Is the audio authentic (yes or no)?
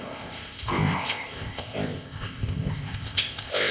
no